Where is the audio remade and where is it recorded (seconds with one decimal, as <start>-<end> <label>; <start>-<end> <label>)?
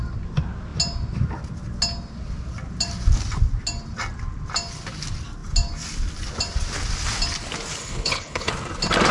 0.0-7.8 recorded; 7.8-8.5 remade; 8.5-9.1 recorded